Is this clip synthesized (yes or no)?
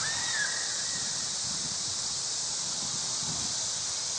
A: no